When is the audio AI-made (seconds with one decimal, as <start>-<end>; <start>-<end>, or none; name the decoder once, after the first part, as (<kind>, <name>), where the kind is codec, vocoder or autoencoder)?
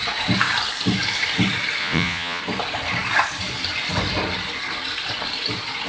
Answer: 1.8-2.4 (vocoder, Vocos)